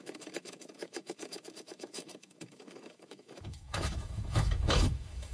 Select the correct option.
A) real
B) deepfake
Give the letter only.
B